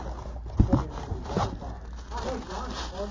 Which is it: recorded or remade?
recorded